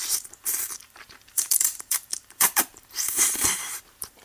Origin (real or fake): fake